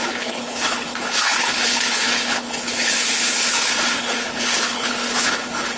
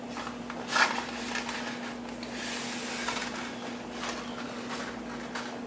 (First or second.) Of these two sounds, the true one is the second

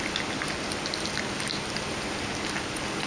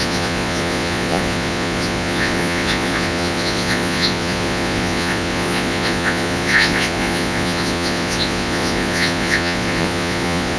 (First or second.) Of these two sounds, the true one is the first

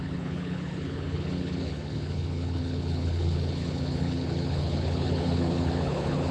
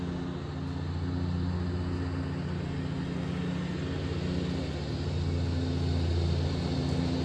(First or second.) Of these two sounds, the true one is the second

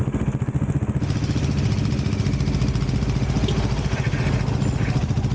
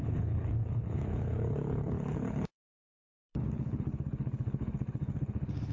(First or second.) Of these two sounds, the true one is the first